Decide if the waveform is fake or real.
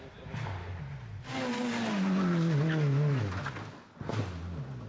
real